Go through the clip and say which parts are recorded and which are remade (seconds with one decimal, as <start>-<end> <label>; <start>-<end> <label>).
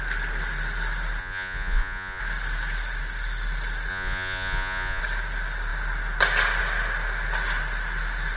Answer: 0.0-1.2 recorded; 1.2-2.2 remade; 2.2-3.9 recorded; 3.9-5.0 remade; 5.0-8.4 recorded